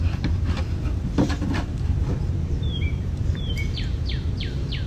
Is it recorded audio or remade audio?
remade